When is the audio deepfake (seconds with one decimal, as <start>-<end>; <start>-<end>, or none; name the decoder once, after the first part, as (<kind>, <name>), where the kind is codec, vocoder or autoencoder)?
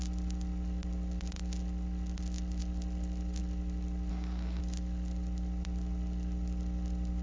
4.1-4.6 (codec, SNAC)